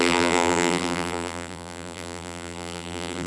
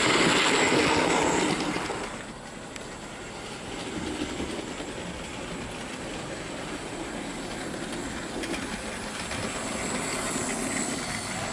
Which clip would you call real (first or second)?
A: second